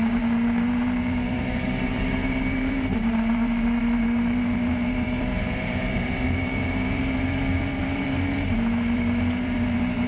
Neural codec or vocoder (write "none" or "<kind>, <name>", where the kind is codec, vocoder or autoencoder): vocoder, BigVGAN v2